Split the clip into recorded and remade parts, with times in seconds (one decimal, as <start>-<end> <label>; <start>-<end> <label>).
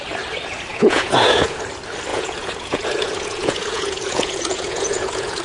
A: 0.0-0.7 recorded; 0.7-1.6 remade; 1.6-2.1 recorded; 2.1-5.4 remade